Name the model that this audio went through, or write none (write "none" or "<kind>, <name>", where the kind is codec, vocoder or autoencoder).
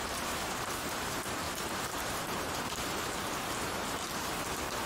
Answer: vocoder, BigVGAN v2